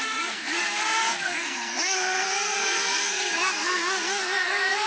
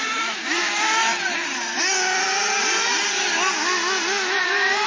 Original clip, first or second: second